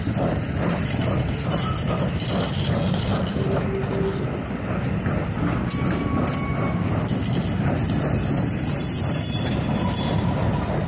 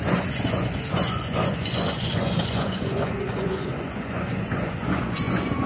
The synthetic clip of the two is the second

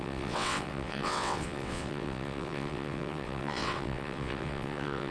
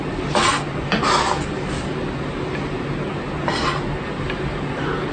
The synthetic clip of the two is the first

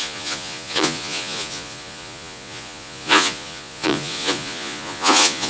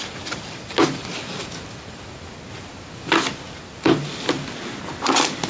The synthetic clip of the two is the first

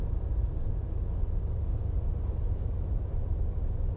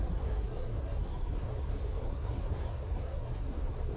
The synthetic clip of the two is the second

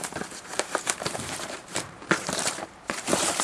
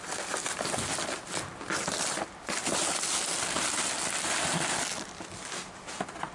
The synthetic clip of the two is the first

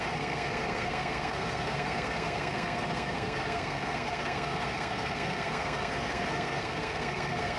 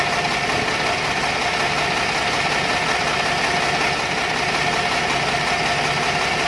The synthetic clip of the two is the first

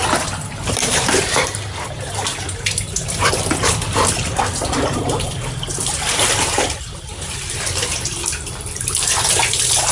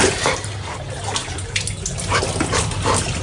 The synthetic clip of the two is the first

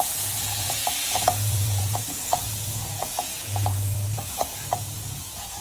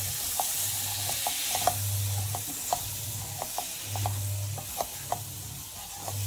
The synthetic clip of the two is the first